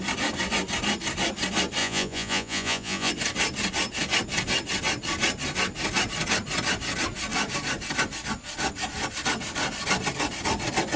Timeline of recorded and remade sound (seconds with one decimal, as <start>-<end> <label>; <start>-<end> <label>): 0.0-1.8 recorded; 1.8-3.1 remade; 3.1-11.0 recorded